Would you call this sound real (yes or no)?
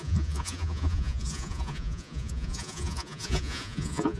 no